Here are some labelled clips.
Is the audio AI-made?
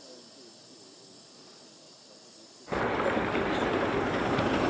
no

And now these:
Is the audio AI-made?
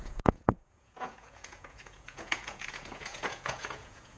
yes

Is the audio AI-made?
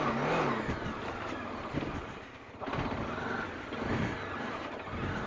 no